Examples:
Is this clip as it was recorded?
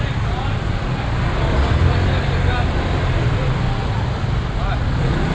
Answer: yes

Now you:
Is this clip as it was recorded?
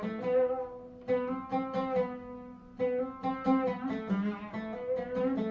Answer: yes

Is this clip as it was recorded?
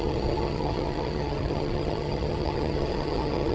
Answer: no